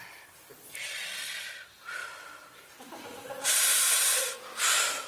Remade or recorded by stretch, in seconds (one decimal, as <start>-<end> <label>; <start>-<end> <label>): 0.0-1.6 remade; 1.6-2.0 recorded; 2.0-4.3 remade; 4.3-5.1 recorded